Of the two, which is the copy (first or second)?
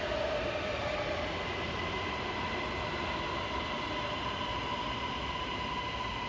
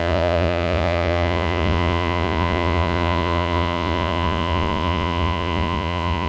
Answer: second